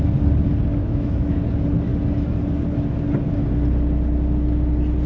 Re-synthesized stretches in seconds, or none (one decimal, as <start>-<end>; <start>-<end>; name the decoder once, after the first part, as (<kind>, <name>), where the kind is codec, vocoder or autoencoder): 0.8-1.4 (autoencoder, DAC-VAE)